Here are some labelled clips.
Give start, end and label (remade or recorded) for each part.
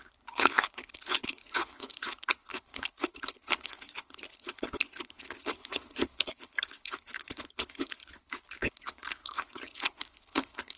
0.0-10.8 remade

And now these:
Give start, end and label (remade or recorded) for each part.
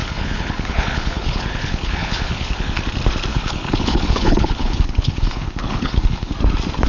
0.0-2.8 remade; 2.8-3.3 recorded; 3.3-6.3 remade; 6.3-6.9 recorded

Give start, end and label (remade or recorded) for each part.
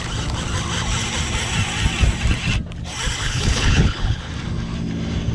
0.0-3.2 recorded; 3.2-4.3 remade; 4.3-5.3 recorded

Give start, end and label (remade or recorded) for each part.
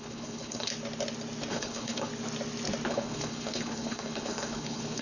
0.0-0.7 remade; 0.7-1.5 recorded; 1.5-2.1 remade; 2.1-2.9 recorded; 2.9-5.0 remade